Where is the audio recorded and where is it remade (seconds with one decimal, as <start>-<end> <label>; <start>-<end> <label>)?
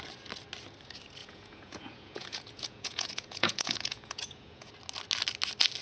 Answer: 0.0-1.2 recorded; 1.2-4.7 remade; 4.7-5.8 recorded